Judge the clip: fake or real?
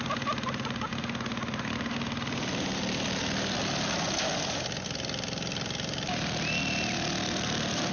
real